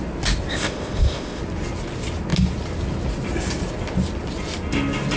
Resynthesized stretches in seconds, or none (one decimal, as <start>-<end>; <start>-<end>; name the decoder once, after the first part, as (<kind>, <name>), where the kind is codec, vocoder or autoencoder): 0.5-1.4 (codec, ZipCodec)